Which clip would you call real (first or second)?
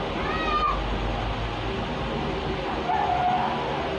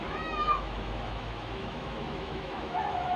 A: first